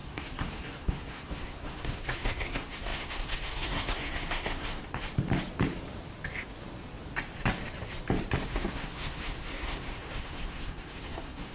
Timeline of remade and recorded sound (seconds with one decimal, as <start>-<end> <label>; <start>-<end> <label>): 0.0-4.8 remade; 4.8-8.5 recorded; 8.5-11.5 remade